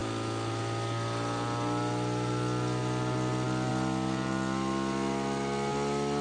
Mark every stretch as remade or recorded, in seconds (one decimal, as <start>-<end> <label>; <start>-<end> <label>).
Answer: 0.0-6.2 recorded